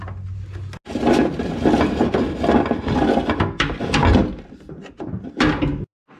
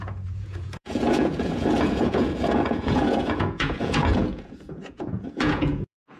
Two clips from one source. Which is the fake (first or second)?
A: second